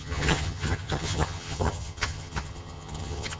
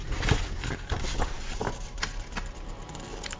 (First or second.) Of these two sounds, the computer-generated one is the first